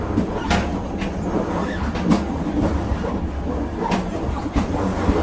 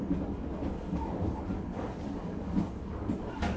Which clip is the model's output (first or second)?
second